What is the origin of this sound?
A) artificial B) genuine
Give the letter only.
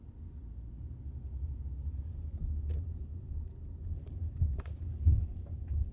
B